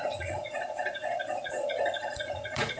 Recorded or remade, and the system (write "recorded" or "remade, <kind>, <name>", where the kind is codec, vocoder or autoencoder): remade, vocoder, Vocos